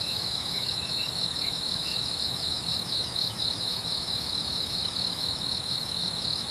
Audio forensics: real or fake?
fake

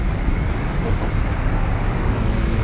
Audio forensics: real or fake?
fake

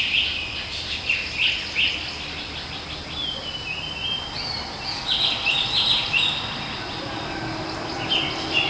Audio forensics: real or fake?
real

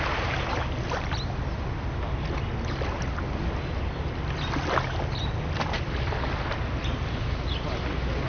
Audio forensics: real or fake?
real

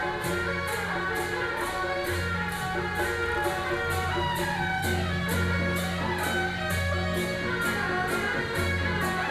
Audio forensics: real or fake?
real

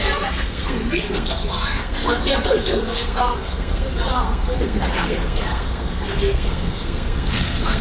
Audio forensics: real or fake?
fake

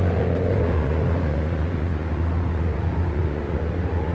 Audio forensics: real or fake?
fake